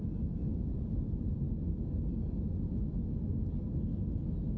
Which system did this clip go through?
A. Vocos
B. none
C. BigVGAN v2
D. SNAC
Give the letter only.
B